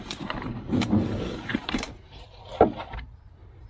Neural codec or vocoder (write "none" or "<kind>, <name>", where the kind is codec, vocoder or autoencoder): vocoder, BigVGAN v2